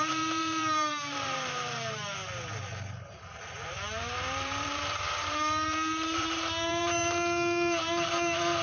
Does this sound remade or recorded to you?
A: remade